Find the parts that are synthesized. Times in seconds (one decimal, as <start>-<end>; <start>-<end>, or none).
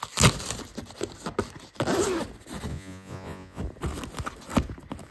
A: 2.7-3.6